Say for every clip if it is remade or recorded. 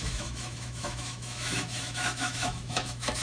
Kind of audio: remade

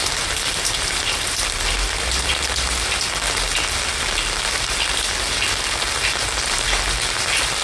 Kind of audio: recorded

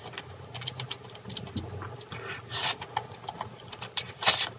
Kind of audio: recorded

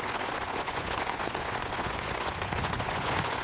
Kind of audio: remade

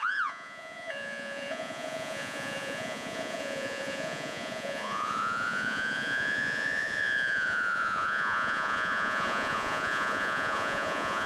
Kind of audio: remade